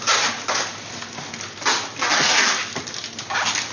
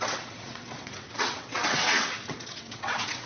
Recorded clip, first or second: first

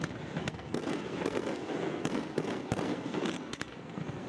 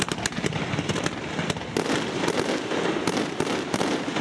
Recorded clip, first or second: second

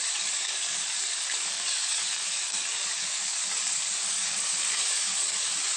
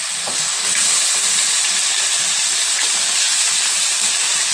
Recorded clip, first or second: second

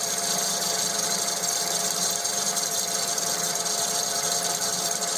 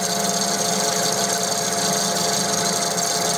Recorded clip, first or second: second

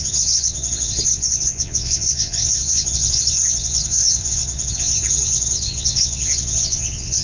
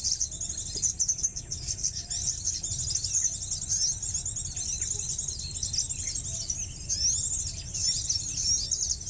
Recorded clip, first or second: second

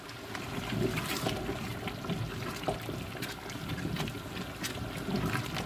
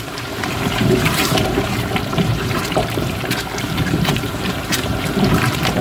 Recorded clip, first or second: first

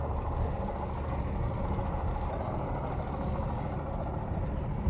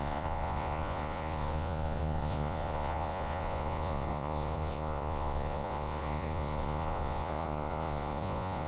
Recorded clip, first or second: first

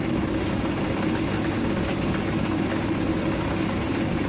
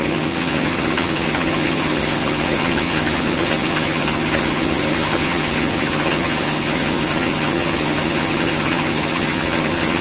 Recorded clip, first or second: first